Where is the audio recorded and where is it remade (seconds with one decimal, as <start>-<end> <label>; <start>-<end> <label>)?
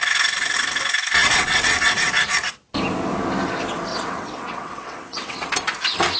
0.0-1.2 recorded; 1.2-2.1 remade; 2.1-3.9 recorded; 3.9-5.5 remade; 5.5-6.2 recorded